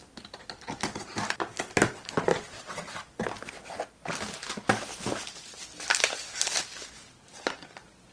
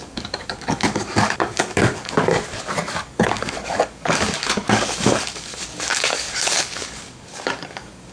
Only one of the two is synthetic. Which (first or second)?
second